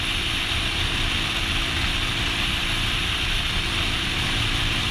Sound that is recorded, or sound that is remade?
recorded